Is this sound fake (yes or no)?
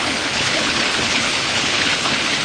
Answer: yes